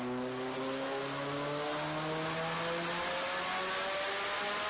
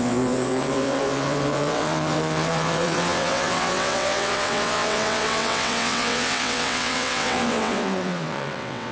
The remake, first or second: second